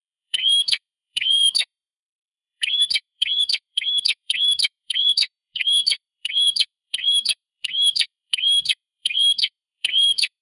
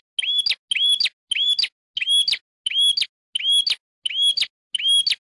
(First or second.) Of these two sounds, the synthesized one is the first